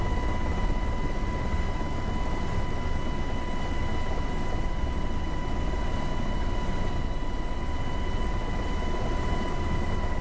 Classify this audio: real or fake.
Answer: real